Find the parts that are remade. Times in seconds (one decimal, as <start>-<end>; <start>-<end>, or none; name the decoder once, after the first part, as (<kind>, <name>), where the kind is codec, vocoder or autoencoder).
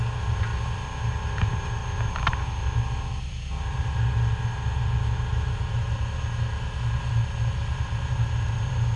none